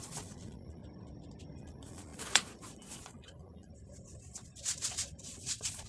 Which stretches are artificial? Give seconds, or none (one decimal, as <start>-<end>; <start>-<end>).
0.0-0.8; 1.6-3.7; 5.3-5.9